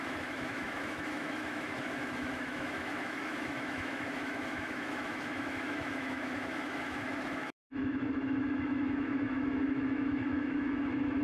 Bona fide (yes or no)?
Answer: no